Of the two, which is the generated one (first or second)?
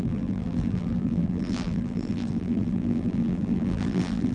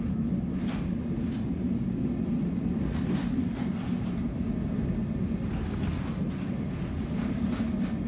first